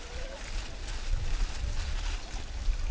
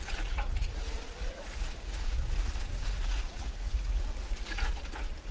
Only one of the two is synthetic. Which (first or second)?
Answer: second